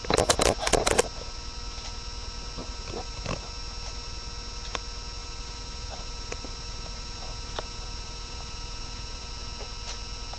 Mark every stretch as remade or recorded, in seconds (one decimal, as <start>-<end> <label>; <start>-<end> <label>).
0.0-2.6 recorded; 2.6-3.5 remade; 3.5-5.2 recorded; 5.2-9.3 remade; 9.3-10.4 recorded